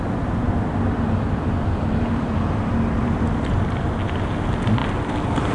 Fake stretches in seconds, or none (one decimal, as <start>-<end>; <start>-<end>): 0.4-3.7